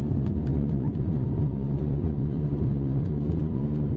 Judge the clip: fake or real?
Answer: fake